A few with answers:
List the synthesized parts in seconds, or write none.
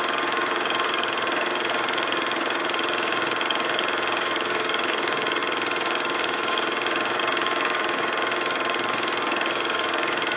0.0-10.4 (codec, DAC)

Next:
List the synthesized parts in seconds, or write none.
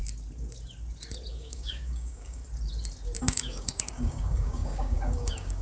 1.3-2.4 (codec, DAC); 3.2-5.6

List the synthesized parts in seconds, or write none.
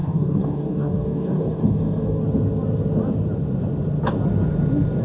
0.0-2.2 (codec, DAC)